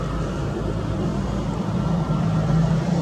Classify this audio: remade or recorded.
remade